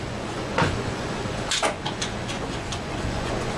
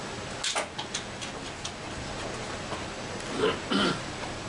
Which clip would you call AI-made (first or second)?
first